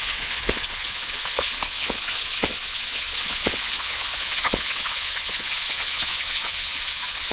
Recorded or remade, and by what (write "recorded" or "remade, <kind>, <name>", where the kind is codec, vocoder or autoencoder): remade, vocoder, Vocos